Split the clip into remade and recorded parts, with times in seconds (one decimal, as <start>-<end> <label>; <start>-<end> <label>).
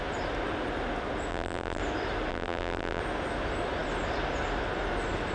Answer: 0.0-1.3 recorded; 1.3-1.8 remade; 1.8-2.3 recorded; 2.3-3.0 remade; 3.0-5.3 recorded